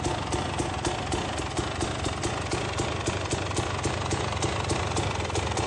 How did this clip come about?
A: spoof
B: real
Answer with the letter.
B